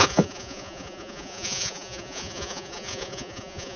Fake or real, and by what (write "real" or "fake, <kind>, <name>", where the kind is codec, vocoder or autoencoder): fake, vocoder, Vocos